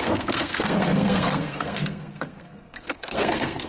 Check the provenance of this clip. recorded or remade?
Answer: remade